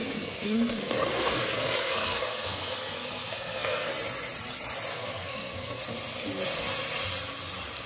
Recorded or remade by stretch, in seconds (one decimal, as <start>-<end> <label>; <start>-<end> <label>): 0.0-3.9 remade; 3.9-4.9 recorded; 4.9-5.8 remade; 5.8-7.9 recorded